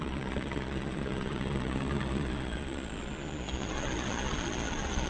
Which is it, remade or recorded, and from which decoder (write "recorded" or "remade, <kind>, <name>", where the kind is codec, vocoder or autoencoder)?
remade, vocoder, Vocos